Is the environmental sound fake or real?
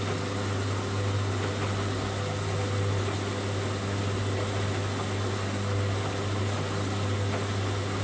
real